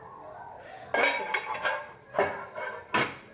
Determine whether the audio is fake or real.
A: real